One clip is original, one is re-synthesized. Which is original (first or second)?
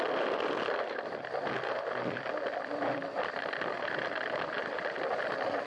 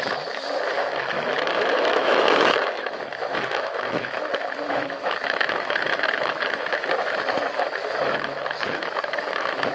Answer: first